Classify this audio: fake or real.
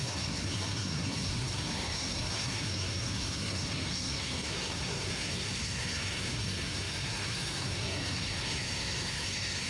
fake